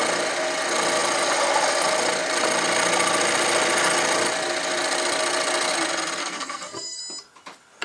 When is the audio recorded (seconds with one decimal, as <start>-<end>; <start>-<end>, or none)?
0.0-6.2; 7.0-7.8